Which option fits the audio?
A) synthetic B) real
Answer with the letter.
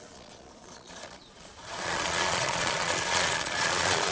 A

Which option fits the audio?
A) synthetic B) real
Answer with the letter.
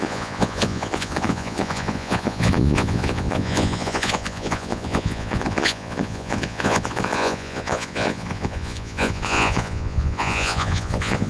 A